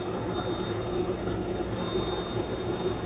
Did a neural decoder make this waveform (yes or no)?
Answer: no